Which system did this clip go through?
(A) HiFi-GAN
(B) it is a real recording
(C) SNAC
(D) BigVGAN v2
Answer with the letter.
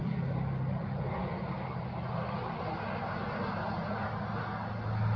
B